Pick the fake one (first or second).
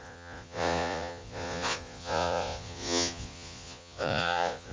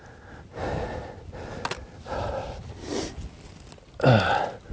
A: first